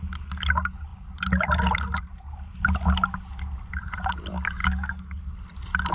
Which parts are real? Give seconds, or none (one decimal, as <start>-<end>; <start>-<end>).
0.0-4.6; 5.2-5.9